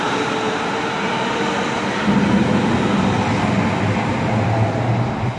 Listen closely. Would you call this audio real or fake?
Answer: real